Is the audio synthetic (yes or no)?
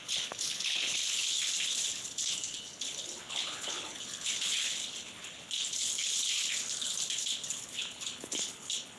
yes